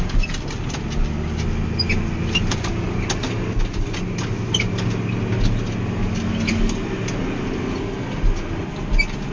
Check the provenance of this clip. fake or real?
real